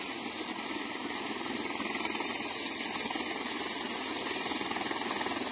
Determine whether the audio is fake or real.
real